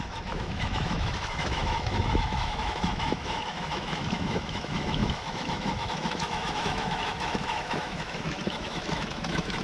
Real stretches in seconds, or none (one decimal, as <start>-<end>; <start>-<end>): none